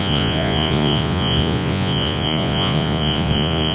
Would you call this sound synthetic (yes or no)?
yes